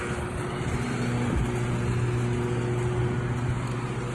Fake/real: real